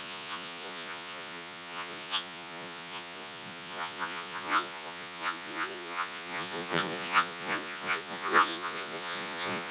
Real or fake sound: fake